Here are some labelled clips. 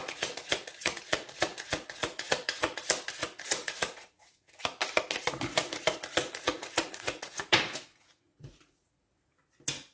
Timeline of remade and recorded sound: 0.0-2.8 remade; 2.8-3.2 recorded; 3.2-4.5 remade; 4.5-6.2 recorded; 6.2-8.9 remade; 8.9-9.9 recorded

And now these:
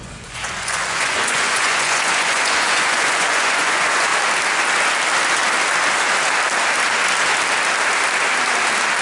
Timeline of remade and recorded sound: 0.0-4.1 remade; 4.1-9.0 recorded

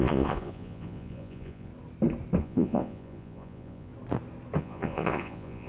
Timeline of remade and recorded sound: 0.0-1.7 remade; 1.7-2.4 recorded; 2.4-3.9 remade; 3.9-4.6 recorded; 4.6-5.7 remade

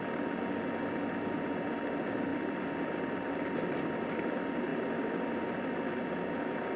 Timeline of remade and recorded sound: 0.0-6.8 recorded

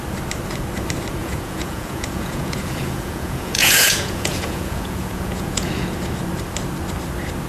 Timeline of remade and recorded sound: 0.0-1.2 recorded; 1.2-5.7 remade; 5.7-7.5 recorded

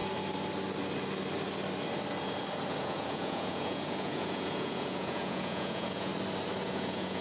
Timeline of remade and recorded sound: 0.0-2.8 recorded; 2.8-6.1 remade; 6.1-6.6 recorded; 6.6-7.2 remade